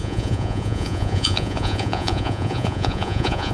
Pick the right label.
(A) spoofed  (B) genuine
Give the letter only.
A